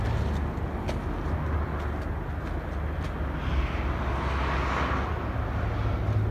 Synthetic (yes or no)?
no